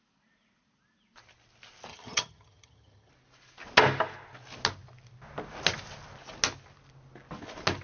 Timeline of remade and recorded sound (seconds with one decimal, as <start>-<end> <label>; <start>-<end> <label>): 0.0-1.9 recorded; 1.9-3.1 remade; 3.1-7.8 recorded